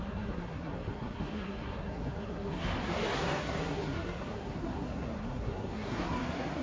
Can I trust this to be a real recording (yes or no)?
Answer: no